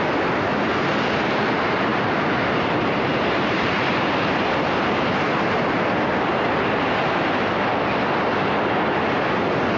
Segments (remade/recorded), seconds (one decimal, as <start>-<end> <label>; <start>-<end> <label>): 0.0-1.9 recorded; 1.9-4.9 remade; 4.9-9.8 recorded